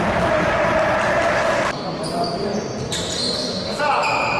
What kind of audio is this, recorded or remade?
recorded